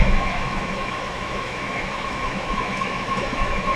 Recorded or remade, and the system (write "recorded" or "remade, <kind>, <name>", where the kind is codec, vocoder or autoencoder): remade, autoencoder, DAC-VAE